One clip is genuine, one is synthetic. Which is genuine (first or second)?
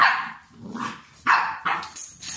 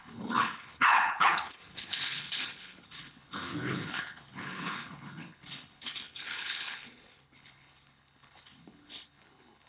first